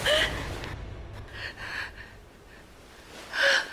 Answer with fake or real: real